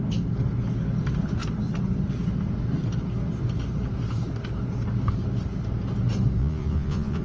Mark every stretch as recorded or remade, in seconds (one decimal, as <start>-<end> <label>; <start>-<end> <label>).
0.0-6.4 recorded; 6.4-7.2 remade